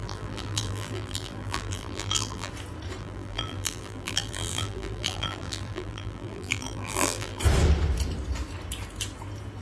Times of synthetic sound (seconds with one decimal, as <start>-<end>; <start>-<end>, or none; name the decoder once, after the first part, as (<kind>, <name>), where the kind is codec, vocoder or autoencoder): 0.0-2.5 (vocoder, BigVGAN v2); 3.0-7.4